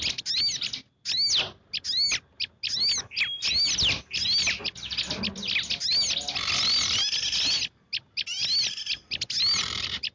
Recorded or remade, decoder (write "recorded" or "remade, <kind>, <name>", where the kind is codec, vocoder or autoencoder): recorded